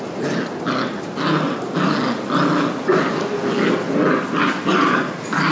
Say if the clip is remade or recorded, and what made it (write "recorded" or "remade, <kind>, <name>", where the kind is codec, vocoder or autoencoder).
recorded